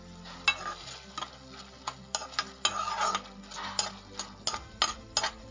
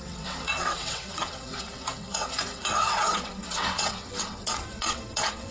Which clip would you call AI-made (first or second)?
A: second